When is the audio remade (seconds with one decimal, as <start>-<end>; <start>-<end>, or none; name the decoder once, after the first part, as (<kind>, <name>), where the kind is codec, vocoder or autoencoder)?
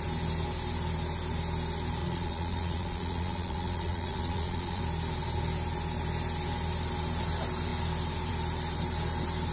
2.0-4.8 (vocoder, Vocos)